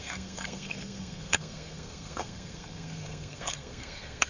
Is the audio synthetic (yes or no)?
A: yes